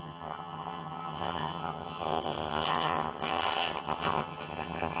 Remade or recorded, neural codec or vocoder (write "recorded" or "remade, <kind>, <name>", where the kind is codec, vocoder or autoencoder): remade, vocoder, HiFi-GAN